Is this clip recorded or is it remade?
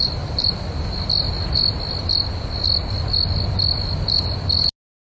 recorded